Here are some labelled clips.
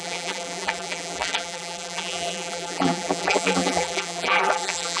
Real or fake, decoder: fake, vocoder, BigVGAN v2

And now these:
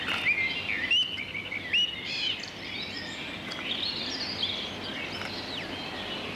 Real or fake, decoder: real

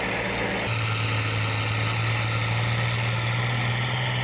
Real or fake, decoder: real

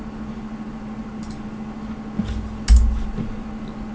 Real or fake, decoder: real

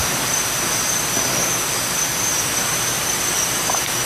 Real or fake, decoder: real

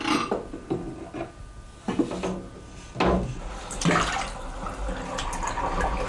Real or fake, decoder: real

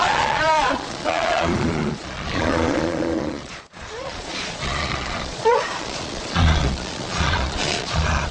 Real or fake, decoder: fake, vocoder, Vocos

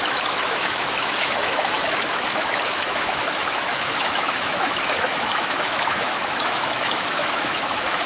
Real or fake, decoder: fake, autoencoder, DAC-VAE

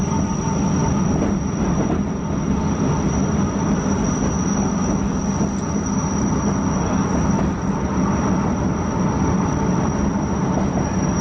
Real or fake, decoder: real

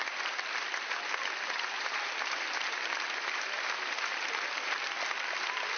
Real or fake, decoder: real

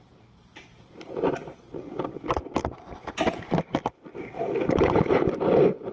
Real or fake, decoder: real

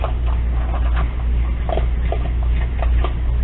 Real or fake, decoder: real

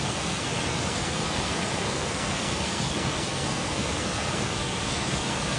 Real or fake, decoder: fake, codec, SNAC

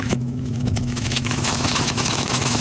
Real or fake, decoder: fake, autoencoder, DAC-VAE